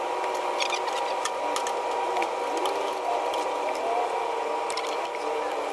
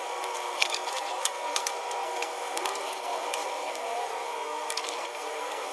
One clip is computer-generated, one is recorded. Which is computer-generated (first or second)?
second